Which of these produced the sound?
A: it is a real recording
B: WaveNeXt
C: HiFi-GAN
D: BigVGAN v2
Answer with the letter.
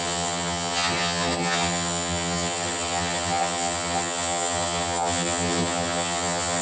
C